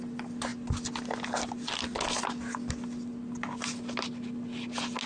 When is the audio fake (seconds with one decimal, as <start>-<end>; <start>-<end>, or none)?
none